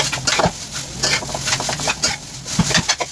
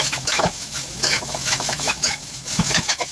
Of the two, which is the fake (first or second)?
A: second